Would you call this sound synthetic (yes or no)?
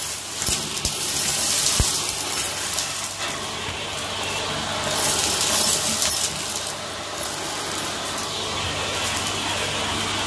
no